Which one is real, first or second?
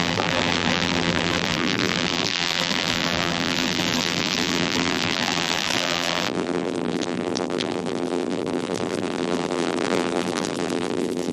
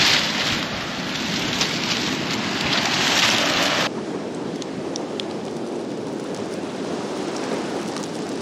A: second